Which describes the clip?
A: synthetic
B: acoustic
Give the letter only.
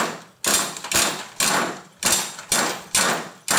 B